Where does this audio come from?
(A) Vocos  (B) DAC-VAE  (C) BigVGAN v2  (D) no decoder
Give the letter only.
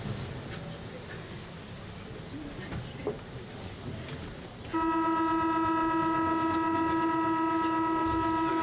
D